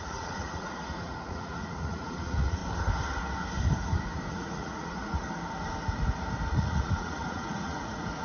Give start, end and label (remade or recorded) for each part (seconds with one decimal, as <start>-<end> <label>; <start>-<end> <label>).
0.0-2.6 remade; 2.6-4.3 recorded; 4.3-5.2 remade; 5.2-6.5 recorded; 6.5-8.2 remade

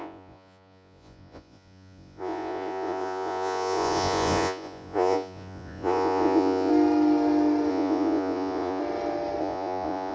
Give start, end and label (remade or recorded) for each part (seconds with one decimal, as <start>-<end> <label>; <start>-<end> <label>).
0.0-6.7 remade; 6.7-7.7 recorded; 7.7-8.8 remade; 8.8-9.4 recorded; 9.4-10.1 remade